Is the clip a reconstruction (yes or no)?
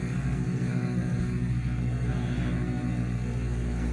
yes